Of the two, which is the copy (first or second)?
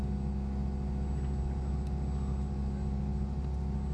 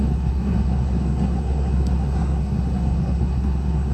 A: second